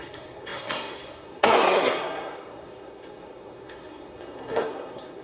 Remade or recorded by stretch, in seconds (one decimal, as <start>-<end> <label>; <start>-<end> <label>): 0.0-5.2 remade